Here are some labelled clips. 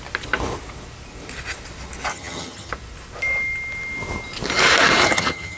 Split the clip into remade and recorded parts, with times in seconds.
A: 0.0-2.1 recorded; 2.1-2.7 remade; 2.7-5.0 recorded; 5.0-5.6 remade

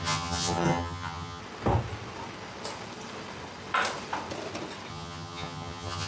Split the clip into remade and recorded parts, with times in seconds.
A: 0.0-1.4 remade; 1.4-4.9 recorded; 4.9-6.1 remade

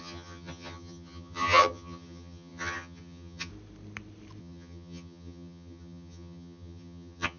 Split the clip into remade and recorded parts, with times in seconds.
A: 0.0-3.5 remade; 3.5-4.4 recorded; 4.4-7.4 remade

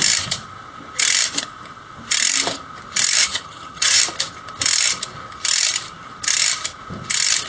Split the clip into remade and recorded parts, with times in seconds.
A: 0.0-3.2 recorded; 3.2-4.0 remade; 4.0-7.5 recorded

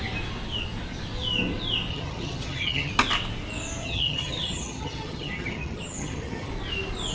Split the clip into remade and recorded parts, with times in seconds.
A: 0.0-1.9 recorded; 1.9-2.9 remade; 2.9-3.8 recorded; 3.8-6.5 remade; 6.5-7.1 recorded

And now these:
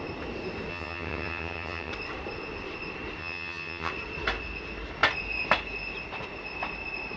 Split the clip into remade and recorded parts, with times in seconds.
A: 0.0-0.7 recorded; 0.7-1.9 remade; 1.9-3.2 recorded; 3.2-3.9 remade; 3.9-7.2 recorded

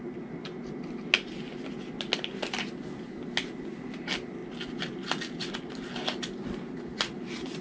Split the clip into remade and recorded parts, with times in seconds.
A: 0.0-7.6 recorded

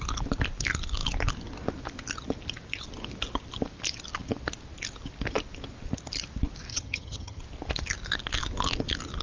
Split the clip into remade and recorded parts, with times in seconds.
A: 0.0-6.7 recorded; 6.7-7.4 remade; 7.4-9.2 recorded